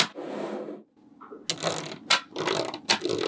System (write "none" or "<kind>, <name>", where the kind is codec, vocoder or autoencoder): none